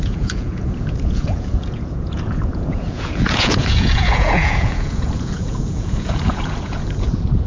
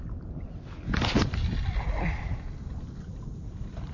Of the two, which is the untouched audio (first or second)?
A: second